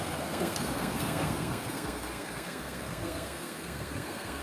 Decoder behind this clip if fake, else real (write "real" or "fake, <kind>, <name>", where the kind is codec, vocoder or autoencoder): fake, codec, SNAC